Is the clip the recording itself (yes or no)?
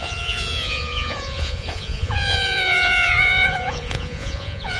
no